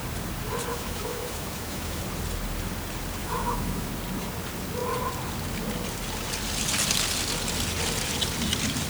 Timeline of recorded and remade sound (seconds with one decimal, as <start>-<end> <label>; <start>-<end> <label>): 0.0-0.7 recorded; 0.7-2.0 remade; 2.0-3.2 recorded; 3.2-3.9 remade; 3.9-8.9 recorded

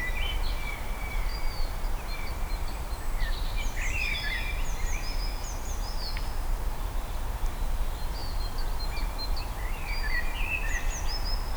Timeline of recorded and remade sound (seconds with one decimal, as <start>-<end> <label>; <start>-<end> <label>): 0.0-1.3 recorded; 1.3-3.2 remade; 3.2-11.6 recorded

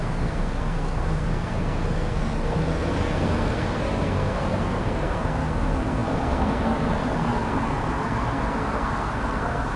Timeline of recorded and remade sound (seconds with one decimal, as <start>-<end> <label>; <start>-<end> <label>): 0.0-9.8 remade

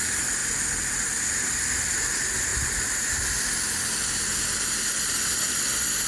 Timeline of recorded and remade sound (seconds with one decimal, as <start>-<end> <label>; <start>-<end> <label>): 0.0-6.1 recorded

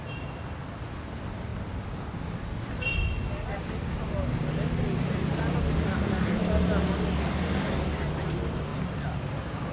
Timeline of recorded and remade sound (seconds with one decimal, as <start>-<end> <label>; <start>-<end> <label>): 0.0-9.7 recorded

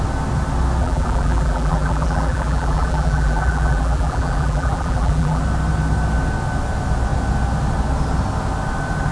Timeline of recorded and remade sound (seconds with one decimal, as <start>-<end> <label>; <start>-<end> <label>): 0.0-0.8 recorded; 0.8-5.4 remade; 5.4-9.1 recorded

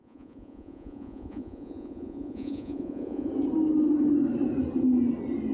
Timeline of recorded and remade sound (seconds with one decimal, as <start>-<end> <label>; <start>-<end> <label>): 0.0-3.3 remade; 3.3-5.5 recorded